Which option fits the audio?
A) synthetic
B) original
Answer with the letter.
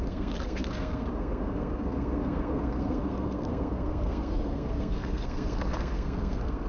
A